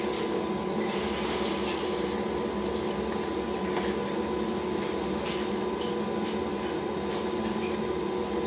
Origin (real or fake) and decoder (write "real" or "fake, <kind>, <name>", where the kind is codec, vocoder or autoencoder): real